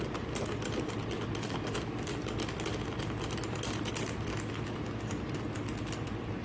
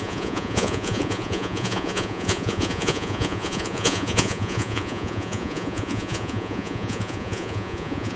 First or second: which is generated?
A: second